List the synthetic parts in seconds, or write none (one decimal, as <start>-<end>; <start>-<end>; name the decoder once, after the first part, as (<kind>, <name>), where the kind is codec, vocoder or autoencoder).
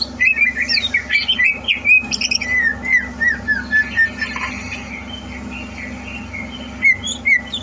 none